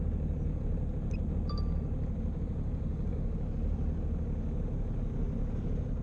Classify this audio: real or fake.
real